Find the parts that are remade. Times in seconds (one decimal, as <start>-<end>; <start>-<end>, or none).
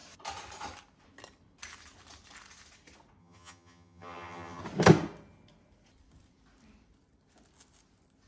3.2-4.6